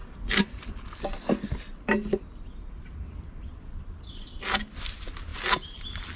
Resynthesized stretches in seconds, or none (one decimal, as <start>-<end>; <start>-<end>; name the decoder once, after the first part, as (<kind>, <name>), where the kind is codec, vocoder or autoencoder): none